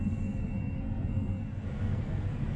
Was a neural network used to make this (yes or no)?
yes